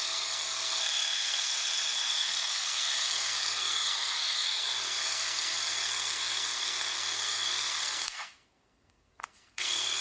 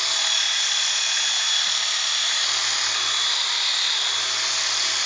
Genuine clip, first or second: second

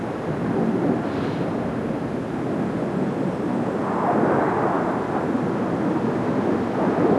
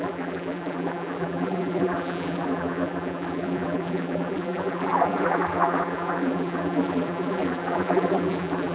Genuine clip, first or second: first